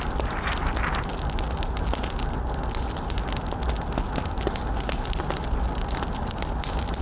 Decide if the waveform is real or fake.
real